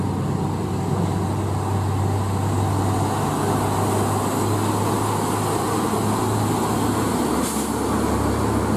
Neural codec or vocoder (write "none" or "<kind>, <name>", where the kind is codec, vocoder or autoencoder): none